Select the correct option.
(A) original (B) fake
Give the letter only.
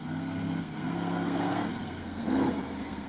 B